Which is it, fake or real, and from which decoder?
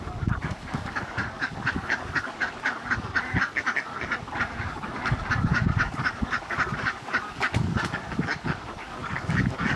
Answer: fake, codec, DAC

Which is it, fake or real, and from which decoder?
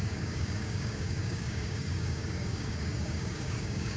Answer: fake, codec, DAC